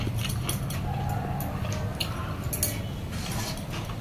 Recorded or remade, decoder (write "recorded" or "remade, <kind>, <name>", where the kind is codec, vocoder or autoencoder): recorded